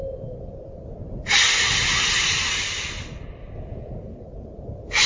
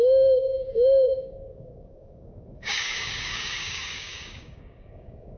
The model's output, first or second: second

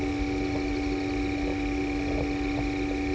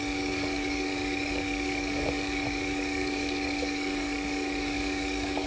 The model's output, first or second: second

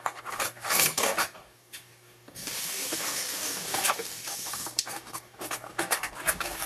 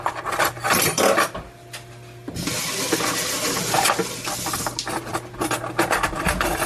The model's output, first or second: first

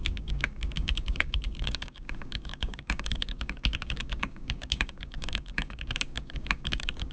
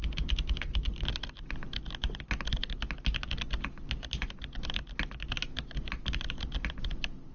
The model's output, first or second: first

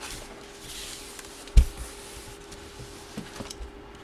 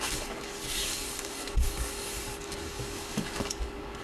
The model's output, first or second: second